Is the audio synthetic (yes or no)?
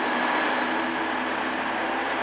no